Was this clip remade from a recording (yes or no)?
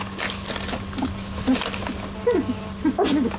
no